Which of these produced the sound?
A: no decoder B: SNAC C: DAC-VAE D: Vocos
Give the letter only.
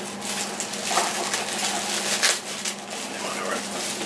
A